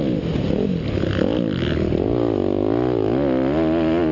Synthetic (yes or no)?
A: no